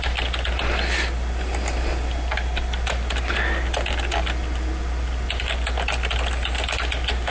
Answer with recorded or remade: recorded